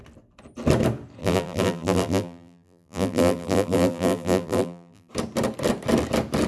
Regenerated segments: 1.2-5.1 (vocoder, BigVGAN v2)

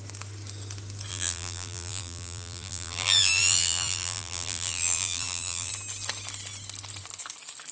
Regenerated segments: 1.1-5.7 (vocoder, BigVGAN v2)

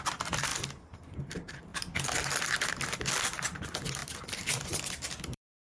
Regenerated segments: 0.0-0.5 (vocoder, BigVGAN v2); 1.2-1.7; 2.7-5.6

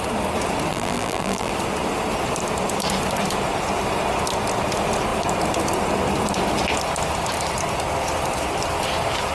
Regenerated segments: 0.7-1.5 (vocoder, BigVGAN v2)

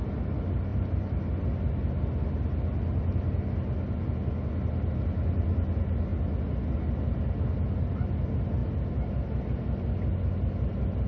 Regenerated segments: 0.7-1.3 (vocoder, BigVGAN v2)